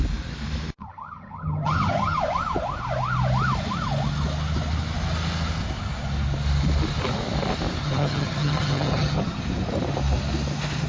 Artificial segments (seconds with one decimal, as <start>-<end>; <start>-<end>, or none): 0.8-2.2; 7.8-9.4